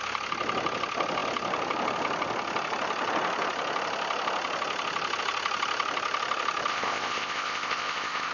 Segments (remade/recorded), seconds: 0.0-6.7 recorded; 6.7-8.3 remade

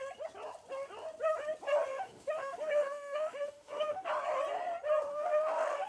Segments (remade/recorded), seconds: 0.0-1.9 recorded; 1.9-4.1 remade; 4.1-5.1 recorded; 5.1-5.9 remade

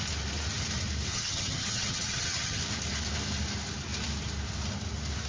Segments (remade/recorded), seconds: 0.0-1.1 recorded; 1.1-2.6 remade; 2.6-5.3 recorded

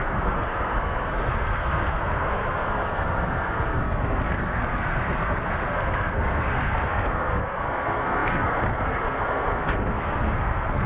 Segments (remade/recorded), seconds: 0.0-10.9 remade

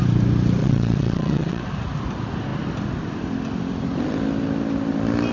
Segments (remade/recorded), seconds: 0.0-0.6 recorded; 0.6-1.6 remade; 1.6-5.3 recorded

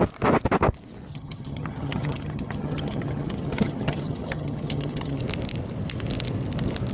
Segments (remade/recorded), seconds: 0.0-1.1 recorded; 1.1-5.2 remade; 5.2-6.9 recorded